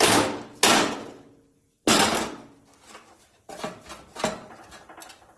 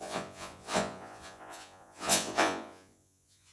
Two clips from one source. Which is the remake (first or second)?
second